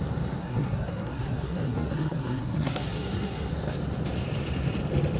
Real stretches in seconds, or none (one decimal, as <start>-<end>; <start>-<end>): 0.0-0.4; 3.5-5.2